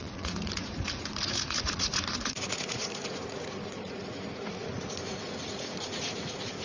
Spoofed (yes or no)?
yes